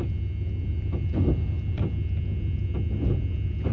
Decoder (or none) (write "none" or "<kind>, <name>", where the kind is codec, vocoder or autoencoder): none